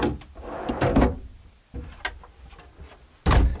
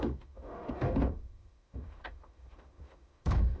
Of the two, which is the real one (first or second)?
first